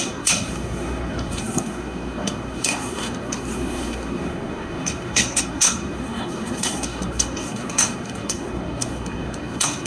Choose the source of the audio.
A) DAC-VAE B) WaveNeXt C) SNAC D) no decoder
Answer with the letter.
C